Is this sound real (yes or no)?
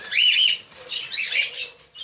no